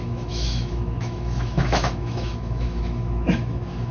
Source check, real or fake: fake